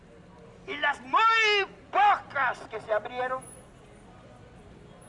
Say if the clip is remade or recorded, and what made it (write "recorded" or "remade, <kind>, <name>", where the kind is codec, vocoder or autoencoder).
recorded